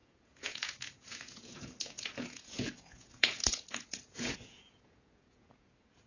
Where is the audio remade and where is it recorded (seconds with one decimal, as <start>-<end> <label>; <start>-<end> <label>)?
0.0-6.1 remade